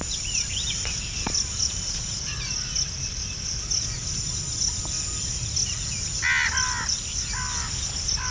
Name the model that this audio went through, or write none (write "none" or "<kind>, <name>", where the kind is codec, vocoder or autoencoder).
none